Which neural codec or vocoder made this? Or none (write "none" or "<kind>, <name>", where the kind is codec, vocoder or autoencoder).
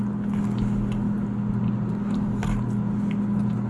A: none